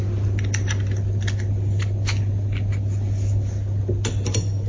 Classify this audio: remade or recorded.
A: recorded